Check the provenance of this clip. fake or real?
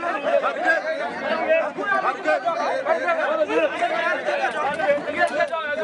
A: real